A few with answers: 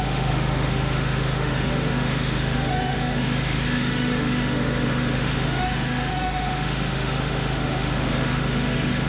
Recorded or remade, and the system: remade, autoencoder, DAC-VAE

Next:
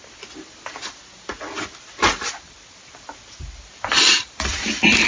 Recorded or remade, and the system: recorded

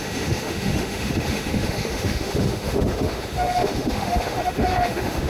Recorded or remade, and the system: remade, autoencoder, DAC-VAE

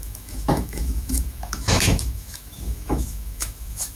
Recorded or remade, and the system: remade, autoencoder, DAC-VAE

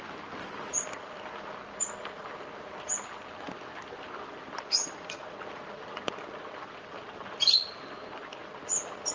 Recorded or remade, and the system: recorded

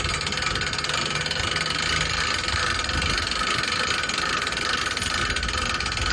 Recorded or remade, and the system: recorded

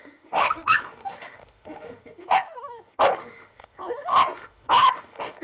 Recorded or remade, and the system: remade, autoencoder, DAC-VAE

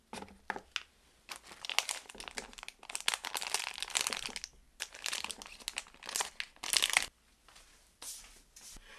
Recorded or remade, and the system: recorded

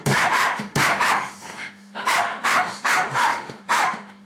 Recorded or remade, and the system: remade, autoencoder, DAC-VAE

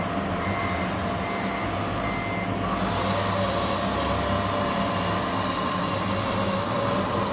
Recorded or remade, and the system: recorded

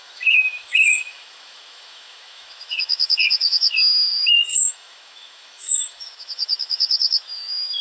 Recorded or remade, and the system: remade, autoencoder, DAC-VAE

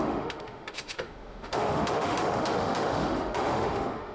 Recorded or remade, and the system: remade, autoencoder, DAC-VAE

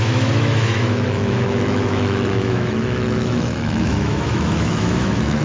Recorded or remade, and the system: remade, autoencoder, DAC-VAE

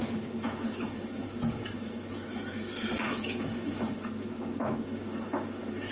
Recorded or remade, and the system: remade, autoencoder, DAC-VAE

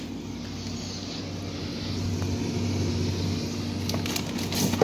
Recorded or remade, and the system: recorded